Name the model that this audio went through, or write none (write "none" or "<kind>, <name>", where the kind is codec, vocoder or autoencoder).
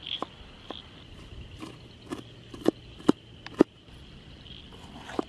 none